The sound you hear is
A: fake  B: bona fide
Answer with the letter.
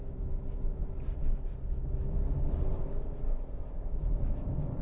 B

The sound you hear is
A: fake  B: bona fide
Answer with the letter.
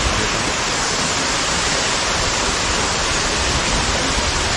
B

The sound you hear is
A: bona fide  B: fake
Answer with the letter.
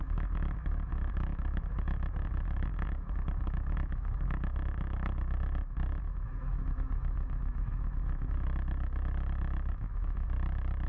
B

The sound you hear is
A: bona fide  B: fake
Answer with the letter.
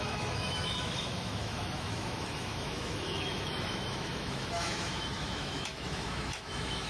B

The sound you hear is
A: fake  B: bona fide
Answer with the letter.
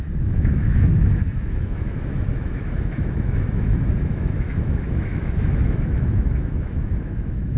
A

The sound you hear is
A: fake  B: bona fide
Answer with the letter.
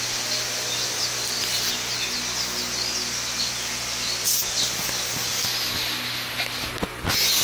B